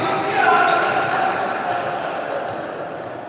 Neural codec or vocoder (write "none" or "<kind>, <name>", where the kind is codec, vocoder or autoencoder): none